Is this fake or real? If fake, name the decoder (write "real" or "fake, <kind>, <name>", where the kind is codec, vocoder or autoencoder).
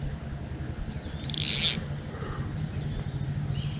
real